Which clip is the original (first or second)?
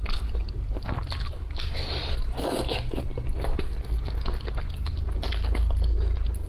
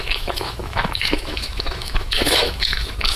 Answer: first